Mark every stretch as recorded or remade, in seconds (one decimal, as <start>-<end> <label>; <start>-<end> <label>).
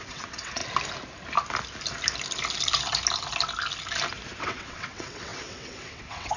0.0-0.6 remade; 0.6-4.4 recorded; 4.4-6.4 remade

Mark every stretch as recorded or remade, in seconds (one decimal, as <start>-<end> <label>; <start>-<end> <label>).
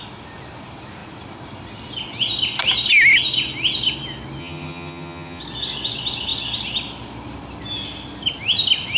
0.0-4.4 recorded; 4.4-5.4 remade; 5.4-9.0 recorded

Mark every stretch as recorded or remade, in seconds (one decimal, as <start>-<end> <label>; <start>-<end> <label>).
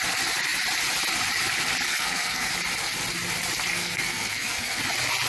0.0-1.9 recorded; 1.9-2.5 remade; 2.5-3.7 recorded; 3.7-4.8 remade; 4.8-5.3 recorded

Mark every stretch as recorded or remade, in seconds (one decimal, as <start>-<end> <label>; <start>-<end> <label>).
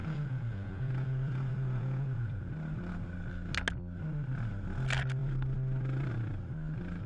0.0-2.5 remade; 2.5-7.1 recorded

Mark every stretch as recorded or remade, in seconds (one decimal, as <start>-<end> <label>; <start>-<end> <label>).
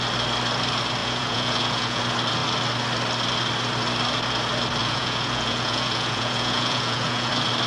0.0-1.0 recorded; 1.0-2.0 remade; 2.0-4.8 recorded; 4.8-7.3 remade; 7.3-7.7 recorded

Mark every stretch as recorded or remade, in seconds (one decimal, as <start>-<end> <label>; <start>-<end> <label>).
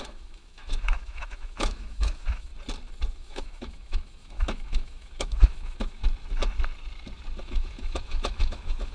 0.0-2.5 remade; 2.5-3.1 recorded; 3.1-6.0 remade; 6.0-7.4 recorded; 7.4-8.9 remade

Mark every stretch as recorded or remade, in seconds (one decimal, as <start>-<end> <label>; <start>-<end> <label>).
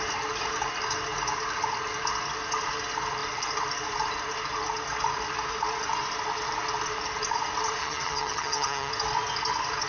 0.0-7.8 recorded; 7.8-8.9 remade; 8.9-9.9 recorded